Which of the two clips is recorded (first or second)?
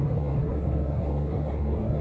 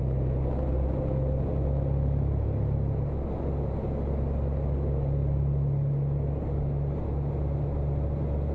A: second